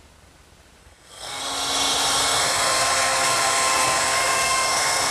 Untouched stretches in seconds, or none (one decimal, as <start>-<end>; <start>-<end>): 0.0-0.8; 1.4-2.2